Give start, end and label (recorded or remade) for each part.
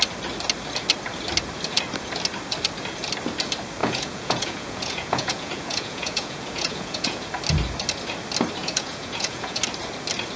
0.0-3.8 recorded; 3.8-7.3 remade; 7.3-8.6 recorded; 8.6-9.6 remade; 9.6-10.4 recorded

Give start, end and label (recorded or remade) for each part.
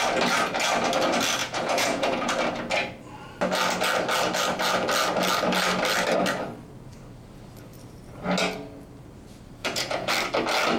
0.0-1.4 recorded; 1.4-2.3 remade; 2.3-9.6 recorded; 9.6-10.1 remade; 10.1-10.8 recorded